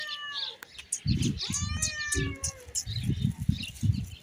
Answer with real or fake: real